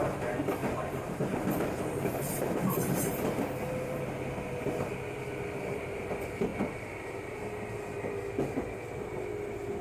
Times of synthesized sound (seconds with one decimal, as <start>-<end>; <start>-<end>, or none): 0.6-4.0